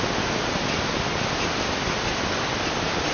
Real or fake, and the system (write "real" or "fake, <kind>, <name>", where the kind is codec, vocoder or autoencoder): real